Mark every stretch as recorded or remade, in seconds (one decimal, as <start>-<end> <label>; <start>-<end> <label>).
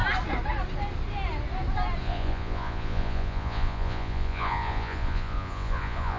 0.0-2.0 recorded; 2.0-6.2 remade